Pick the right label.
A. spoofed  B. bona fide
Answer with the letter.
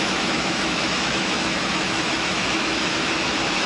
A